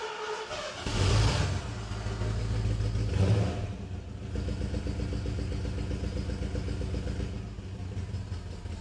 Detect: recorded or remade recorded